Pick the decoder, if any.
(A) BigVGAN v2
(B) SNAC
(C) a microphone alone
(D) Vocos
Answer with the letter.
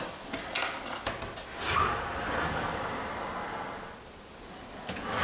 C